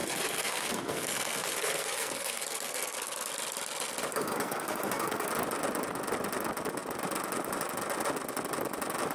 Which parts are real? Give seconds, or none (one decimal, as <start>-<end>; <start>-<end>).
3.3-4.1; 5.3-9.1